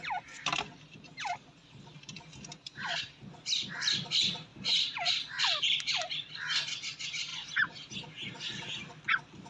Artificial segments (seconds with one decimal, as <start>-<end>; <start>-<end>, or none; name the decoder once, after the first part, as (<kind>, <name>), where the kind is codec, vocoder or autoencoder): 4.5-5.1 (vocoder, BigVGAN v2); 7.3-7.9